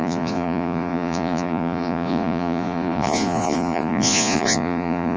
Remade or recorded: remade